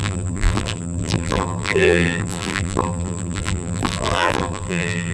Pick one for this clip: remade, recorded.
remade